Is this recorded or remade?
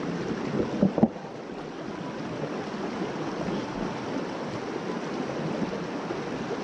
recorded